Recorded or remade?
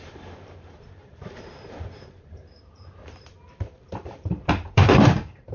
remade